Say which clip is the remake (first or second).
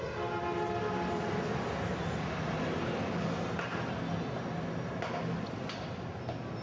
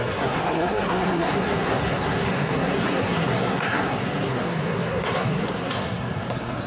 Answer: second